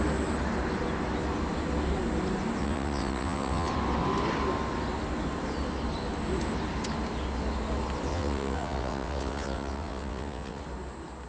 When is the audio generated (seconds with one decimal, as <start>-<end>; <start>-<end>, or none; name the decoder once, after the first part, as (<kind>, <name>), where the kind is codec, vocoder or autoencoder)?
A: 2.6-3.7 (vocoder, WaveNeXt); 8.1-10.6